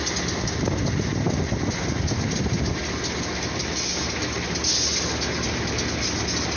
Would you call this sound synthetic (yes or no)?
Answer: no